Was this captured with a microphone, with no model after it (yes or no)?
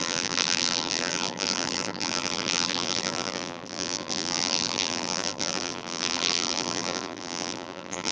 no